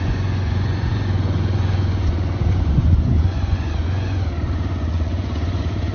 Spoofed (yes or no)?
yes